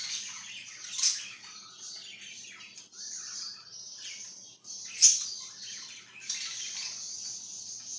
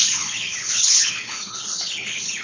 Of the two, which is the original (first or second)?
first